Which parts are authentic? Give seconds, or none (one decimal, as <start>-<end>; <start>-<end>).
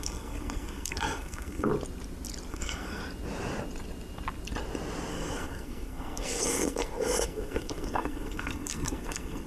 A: 1.7-2.5; 3.0-5.1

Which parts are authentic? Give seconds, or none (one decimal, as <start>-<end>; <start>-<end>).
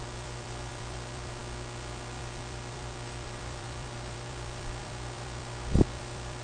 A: 1.4-2.2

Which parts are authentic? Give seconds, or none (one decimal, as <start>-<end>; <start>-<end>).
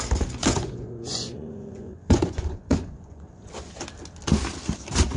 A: 0.0-0.4; 3.5-5.2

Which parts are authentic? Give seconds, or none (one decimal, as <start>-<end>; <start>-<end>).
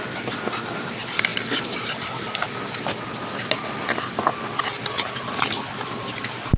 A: 0.0-6.6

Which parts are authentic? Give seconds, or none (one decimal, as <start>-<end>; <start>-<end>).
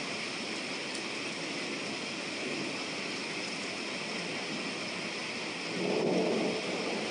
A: 0.0-7.1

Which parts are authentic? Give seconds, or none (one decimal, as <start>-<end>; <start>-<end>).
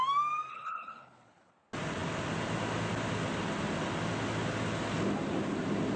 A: 0.0-0.5; 1.5-6.0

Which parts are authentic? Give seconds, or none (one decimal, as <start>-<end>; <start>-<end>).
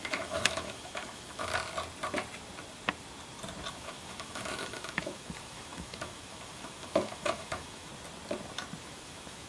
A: 1.5-3.7; 7.9-8.8